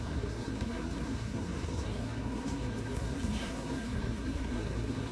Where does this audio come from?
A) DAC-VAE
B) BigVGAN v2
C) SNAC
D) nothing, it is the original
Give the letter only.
C